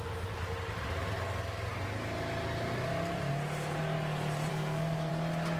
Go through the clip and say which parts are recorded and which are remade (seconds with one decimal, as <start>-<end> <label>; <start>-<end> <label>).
0.0-4.5 recorded; 4.5-5.1 remade; 5.1-5.6 recorded